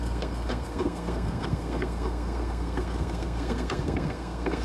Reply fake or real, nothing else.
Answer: fake